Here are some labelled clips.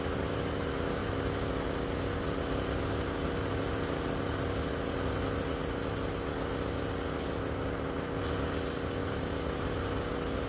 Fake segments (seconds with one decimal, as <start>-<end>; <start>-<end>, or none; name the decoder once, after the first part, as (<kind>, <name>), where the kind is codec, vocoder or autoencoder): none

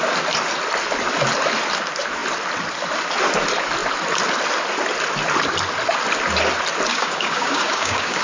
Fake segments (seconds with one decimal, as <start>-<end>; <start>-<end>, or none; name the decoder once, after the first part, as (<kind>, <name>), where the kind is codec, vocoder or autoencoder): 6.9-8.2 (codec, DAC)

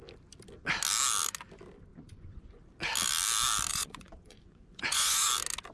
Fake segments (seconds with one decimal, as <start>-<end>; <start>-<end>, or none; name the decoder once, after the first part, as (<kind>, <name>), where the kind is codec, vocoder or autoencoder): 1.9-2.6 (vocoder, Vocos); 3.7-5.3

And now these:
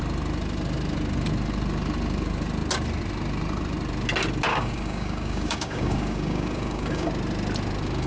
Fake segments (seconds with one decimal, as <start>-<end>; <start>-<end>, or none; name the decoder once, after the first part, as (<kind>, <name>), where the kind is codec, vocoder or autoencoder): 4.5-7.1 (codec, DAC)

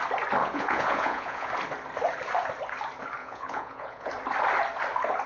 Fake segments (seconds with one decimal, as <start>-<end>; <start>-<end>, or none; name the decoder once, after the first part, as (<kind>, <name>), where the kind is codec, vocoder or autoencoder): 0.4-1.5 (vocoder, Vocos); 3.2-4.1

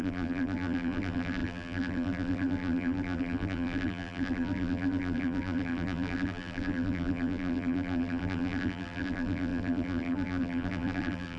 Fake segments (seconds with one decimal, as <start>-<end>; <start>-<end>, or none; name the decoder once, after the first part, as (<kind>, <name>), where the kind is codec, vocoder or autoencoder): 0.0-11.4 (vocoder, BigVGAN v2)

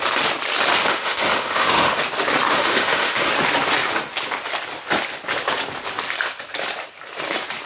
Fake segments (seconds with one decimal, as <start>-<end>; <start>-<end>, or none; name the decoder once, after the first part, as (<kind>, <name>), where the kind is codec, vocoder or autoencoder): 0.8-2.0 (autoencoder, DAC-VAE); 2.5-3.3